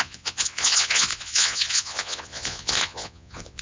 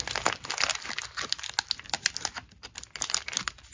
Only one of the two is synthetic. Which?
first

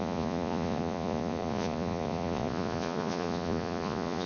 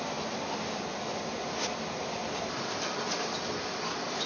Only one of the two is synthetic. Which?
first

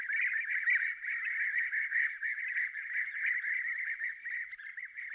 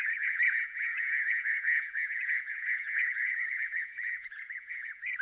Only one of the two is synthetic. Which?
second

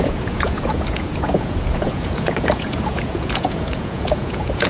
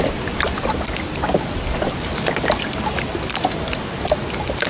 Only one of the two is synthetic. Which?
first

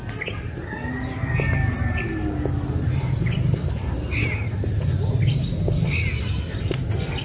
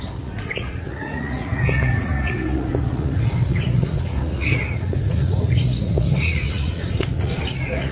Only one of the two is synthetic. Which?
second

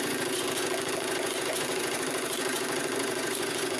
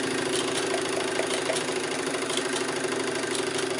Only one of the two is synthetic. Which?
first